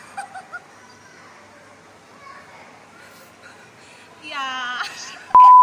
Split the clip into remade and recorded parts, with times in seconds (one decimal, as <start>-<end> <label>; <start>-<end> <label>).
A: 0.0-5.6 recorded